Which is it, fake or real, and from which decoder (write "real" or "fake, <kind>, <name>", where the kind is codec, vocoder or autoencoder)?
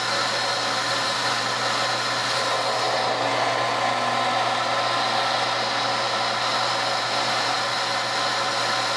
real